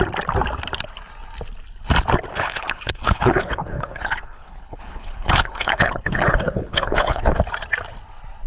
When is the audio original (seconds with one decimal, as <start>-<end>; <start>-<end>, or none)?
0.0-2.3; 7.4-8.5